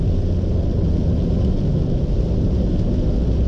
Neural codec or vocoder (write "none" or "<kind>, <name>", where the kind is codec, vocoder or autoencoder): none